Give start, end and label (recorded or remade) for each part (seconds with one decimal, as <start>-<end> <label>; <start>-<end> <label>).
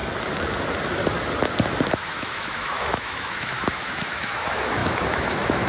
0.0-1.9 recorded; 1.9-5.7 remade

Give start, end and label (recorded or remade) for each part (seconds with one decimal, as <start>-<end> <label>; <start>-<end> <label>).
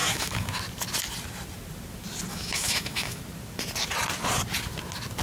0.0-0.6 remade; 0.6-2.3 recorded; 2.3-3.2 remade; 3.2-5.2 recorded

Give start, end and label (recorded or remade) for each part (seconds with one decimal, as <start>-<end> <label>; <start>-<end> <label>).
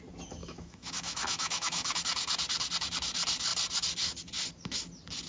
0.0-0.4 recorded; 0.4-2.0 remade; 2.0-5.3 recorded